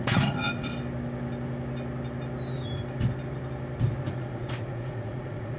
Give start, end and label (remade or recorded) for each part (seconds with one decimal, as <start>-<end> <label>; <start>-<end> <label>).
0.0-0.7 remade; 0.7-4.1 recorded; 4.1-5.6 remade